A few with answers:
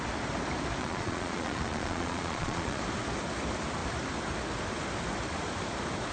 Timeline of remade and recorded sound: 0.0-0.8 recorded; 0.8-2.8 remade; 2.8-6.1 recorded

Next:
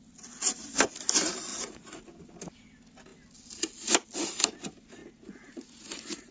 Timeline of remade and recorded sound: 0.0-1.5 recorded; 1.5-2.0 remade; 2.0-5.0 recorded; 5.0-6.3 remade

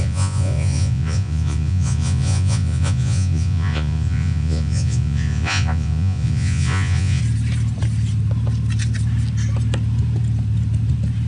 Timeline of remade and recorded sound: 0.0-7.2 remade; 7.2-11.3 recorded

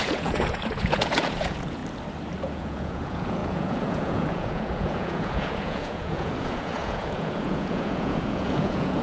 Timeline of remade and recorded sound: 0.0-1.8 remade; 1.8-2.4 recorded; 2.4-9.0 remade

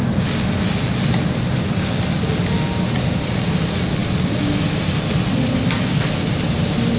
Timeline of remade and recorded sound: 0.0-7.0 recorded

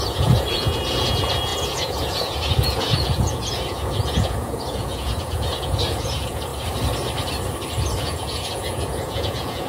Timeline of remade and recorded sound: 0.0-6.5 remade; 6.5-8.0 recorded; 8.0-9.7 remade